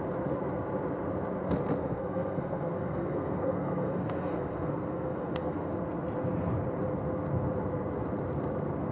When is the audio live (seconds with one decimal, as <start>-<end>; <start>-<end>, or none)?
0.0-1.8; 5.7-8.9